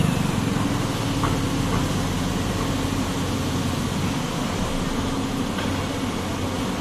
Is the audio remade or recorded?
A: recorded